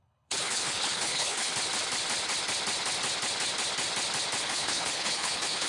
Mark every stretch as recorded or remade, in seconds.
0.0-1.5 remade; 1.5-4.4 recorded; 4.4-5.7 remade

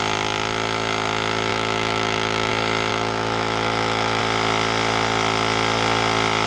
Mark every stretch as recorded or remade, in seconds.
0.0-1.5 recorded; 1.5-2.5 remade; 2.5-2.9 recorded; 2.9-4.2 remade; 4.2-6.5 recorded